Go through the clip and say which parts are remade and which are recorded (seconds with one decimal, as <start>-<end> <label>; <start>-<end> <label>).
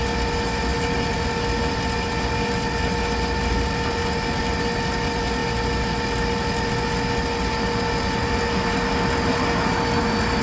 0.0-10.4 recorded